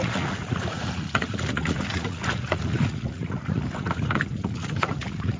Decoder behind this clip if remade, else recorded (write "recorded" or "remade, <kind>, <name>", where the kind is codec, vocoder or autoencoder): remade, vocoder, Vocos